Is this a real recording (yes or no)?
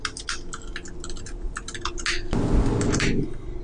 yes